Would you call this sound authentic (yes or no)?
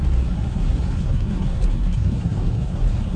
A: no